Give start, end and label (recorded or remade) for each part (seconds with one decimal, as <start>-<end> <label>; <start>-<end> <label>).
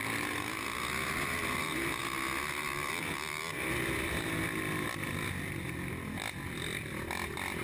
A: 0.0-7.6 recorded